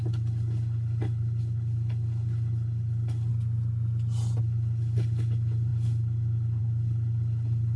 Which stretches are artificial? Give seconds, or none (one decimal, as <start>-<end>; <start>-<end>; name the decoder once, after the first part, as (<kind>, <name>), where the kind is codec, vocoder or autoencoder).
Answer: 0.0-3.3 (codec, HILCodec); 4.4-7.8